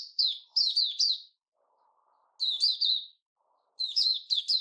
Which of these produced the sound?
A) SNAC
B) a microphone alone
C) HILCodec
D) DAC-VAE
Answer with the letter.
B